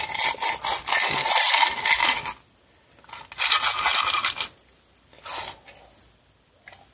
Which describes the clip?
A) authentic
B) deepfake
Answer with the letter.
A